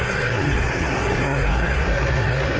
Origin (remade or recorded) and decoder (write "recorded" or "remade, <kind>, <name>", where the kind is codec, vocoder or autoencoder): remade, codec, SNAC